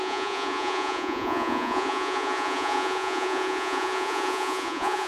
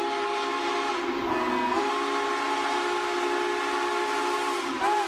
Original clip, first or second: second